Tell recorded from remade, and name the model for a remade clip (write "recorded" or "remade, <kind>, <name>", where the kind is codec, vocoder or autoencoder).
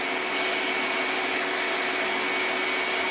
recorded